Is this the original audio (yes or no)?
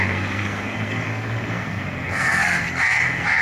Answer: no